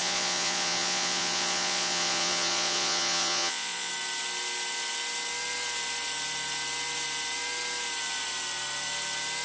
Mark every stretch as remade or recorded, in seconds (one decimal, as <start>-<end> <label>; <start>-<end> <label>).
0.0-3.9 remade; 3.9-9.4 recorded